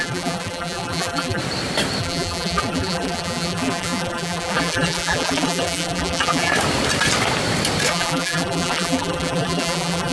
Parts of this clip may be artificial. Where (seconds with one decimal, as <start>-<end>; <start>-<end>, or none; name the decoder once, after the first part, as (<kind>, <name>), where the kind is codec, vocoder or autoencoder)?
0.0-1.4 (vocoder, BigVGAN v2); 2.0-6.5; 7.9-10.1